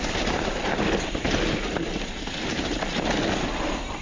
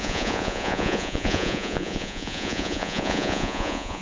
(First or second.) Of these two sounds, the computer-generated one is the second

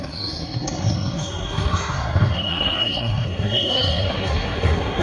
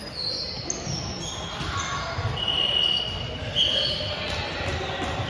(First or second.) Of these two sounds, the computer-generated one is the first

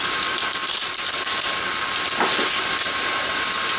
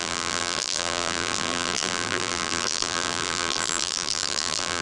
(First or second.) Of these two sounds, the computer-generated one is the second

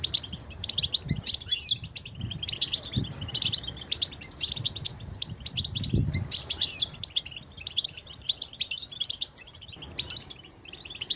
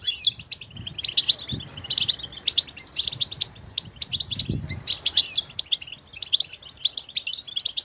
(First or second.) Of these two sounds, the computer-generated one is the first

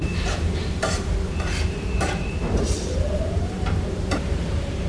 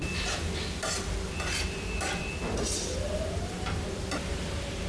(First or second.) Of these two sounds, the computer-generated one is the first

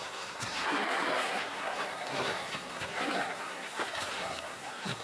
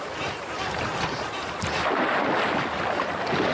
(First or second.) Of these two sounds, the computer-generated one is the first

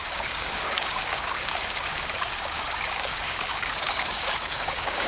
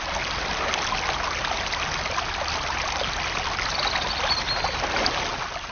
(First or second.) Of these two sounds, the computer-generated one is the first